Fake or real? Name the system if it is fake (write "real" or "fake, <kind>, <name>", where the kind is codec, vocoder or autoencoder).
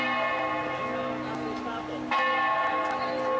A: real